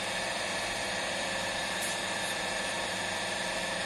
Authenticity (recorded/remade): remade